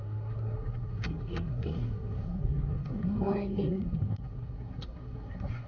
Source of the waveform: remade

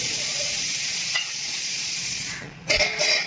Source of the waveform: remade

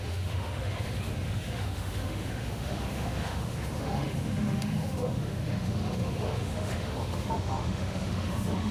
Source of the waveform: remade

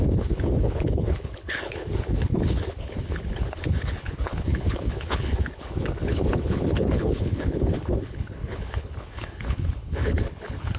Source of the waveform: remade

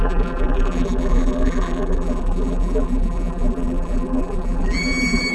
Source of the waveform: remade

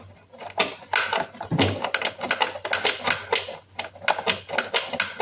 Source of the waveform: recorded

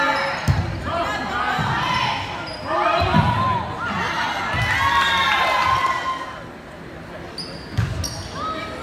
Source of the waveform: recorded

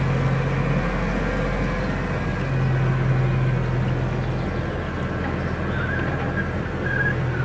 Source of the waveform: recorded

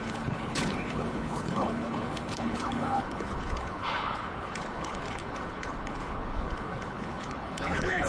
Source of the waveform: remade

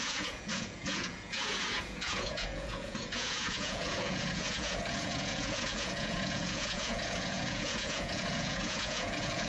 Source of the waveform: remade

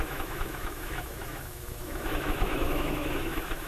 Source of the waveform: remade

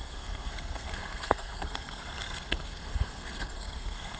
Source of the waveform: remade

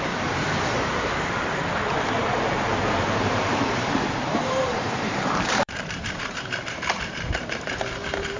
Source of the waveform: remade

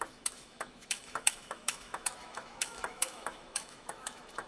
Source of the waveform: remade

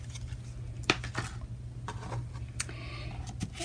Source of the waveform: recorded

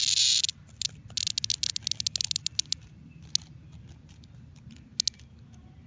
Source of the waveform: recorded